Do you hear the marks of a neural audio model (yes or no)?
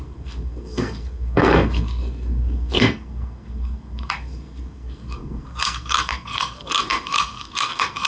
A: yes